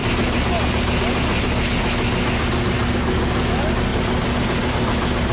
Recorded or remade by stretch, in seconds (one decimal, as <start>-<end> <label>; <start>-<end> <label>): 0.0-5.3 recorded